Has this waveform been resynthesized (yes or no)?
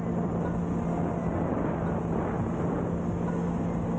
no